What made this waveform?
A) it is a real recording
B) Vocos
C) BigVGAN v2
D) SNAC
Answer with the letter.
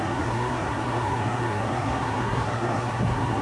D